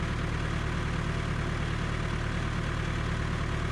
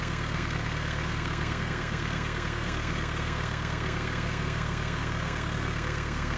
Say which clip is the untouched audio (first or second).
first